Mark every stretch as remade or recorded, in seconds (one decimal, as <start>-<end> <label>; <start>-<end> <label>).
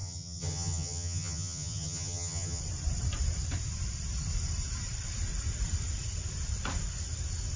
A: 0.0-2.6 remade; 2.6-7.6 recorded